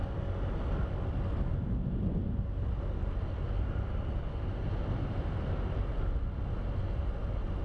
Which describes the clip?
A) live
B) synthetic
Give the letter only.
A